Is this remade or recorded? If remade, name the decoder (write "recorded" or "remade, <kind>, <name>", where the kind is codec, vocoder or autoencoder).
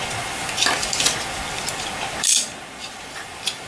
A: remade, vocoder, BigVGAN v2